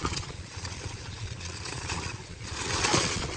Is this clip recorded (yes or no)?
no